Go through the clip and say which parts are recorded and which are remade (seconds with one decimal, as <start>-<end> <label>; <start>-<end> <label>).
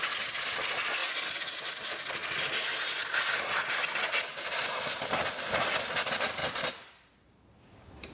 0.0-6.4 recorded; 6.4-8.1 remade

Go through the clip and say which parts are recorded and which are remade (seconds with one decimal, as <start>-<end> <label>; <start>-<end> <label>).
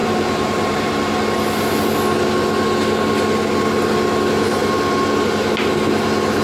0.0-1.2 remade; 1.2-6.4 recorded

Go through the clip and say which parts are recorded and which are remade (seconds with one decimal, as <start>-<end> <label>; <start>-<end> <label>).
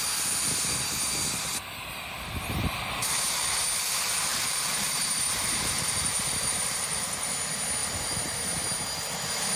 0.0-4.3 recorded; 4.3-7.3 remade; 7.3-7.8 recorded; 7.8-8.8 remade; 8.8-9.6 recorded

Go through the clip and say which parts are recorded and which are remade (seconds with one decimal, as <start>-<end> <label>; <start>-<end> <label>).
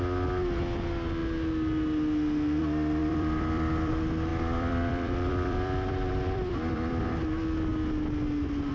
0.0-3.0 recorded; 3.0-3.9 remade; 3.9-4.3 recorded; 4.3-7.0 remade; 7.0-8.7 recorded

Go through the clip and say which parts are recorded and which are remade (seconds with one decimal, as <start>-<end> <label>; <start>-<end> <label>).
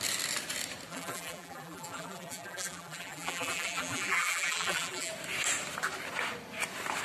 0.0-0.9 recorded; 0.9-5.1 remade; 5.1-7.0 recorded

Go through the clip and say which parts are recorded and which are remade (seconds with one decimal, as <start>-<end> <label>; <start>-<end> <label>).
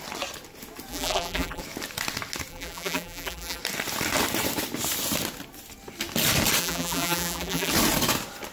0.0-0.9 recorded; 0.9-1.6 remade; 1.6-2.5 recorded; 2.5-3.6 remade; 3.6-6.6 recorded; 6.6-7.7 remade; 7.7-8.5 recorded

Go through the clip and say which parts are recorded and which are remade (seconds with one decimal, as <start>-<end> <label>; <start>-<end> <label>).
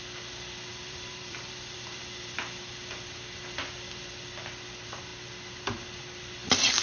0.0-0.7 recorded; 0.7-2.0 remade; 2.0-6.8 recorded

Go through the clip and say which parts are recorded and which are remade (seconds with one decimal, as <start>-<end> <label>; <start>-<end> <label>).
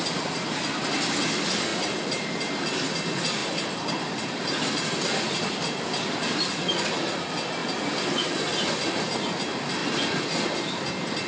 0.0-1.7 recorded; 1.7-2.5 remade; 2.5-3.4 recorded; 3.4-6.5 remade; 6.5-7.6 recorded; 7.6-8.1 remade; 8.1-9.8 recorded; 9.8-10.5 remade; 10.5-11.3 recorded